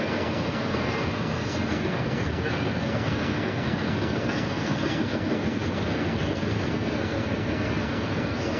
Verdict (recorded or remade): remade